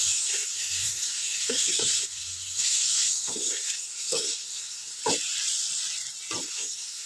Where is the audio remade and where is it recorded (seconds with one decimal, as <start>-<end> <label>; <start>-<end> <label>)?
0.0-5.0 remade; 5.0-6.4 recorded; 6.4-7.1 remade